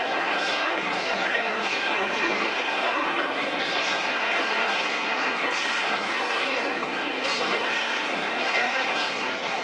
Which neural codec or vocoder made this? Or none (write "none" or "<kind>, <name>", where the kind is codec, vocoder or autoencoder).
codec, SNAC